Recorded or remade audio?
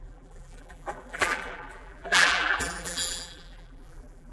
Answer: remade